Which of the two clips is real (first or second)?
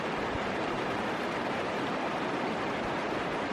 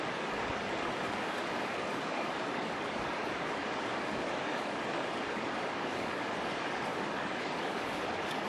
first